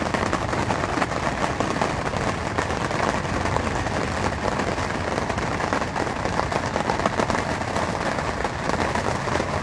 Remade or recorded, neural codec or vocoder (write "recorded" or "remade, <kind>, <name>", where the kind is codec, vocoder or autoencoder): recorded